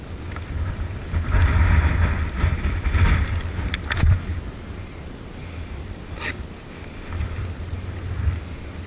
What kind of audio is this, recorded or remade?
recorded